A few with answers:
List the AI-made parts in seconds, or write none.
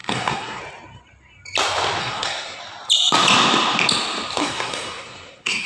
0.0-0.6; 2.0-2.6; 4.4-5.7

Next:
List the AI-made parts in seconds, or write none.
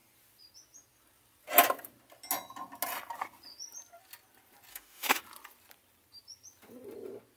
4.7-5.2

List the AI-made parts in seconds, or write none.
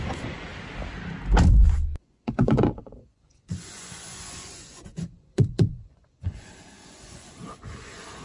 0.0-0.5; 2.0-8.2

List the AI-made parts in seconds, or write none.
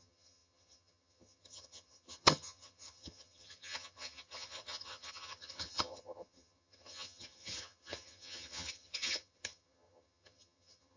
0.0-11.0